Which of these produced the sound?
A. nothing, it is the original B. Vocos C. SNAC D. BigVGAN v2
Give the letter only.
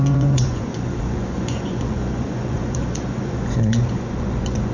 B